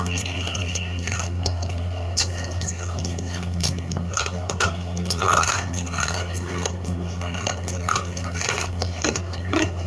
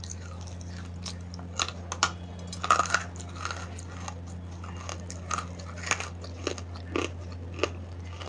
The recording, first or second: second